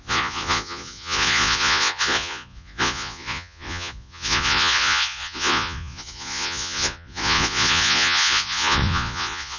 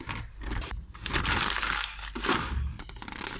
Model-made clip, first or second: first